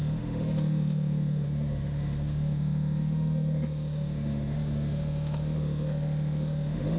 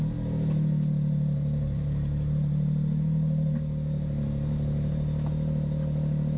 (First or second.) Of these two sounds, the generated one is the first